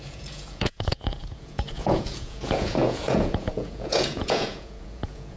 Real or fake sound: fake